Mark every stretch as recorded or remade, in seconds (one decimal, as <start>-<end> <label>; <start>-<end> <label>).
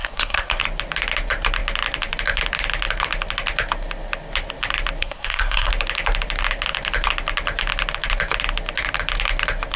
0.0-0.6 remade; 0.6-5.0 recorded; 5.0-5.7 remade; 5.7-9.8 recorded